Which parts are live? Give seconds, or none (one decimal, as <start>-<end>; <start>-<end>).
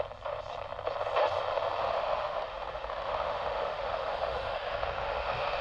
0.0-1.8